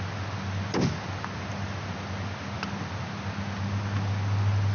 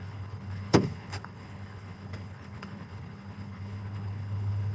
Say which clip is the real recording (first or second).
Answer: first